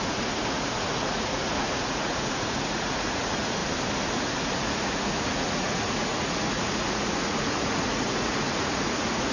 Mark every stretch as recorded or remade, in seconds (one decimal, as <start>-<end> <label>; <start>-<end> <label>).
0.0-3.6 remade; 3.6-4.1 recorded; 4.1-9.3 remade